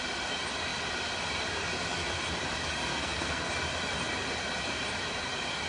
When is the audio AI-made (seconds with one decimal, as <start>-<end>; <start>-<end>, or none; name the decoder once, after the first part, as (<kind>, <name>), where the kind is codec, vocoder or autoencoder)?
2.9-3.5 (codec, SNAC)